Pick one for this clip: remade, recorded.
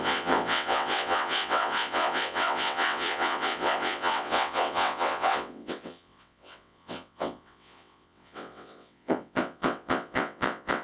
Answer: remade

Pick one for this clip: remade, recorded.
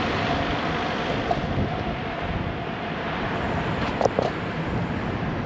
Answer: recorded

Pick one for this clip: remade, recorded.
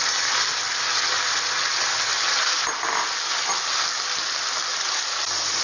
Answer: recorded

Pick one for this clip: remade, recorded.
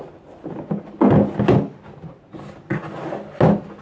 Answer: recorded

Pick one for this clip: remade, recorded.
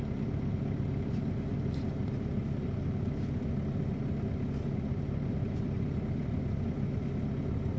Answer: recorded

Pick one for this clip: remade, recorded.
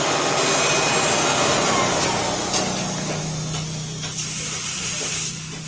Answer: recorded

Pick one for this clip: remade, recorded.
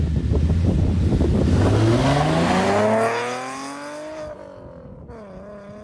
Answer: recorded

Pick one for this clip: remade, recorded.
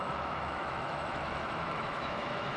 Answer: remade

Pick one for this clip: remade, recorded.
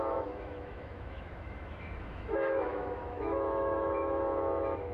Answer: remade